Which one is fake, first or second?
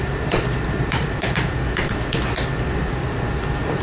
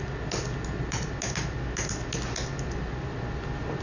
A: first